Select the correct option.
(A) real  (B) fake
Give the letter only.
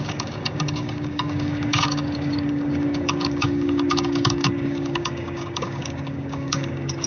B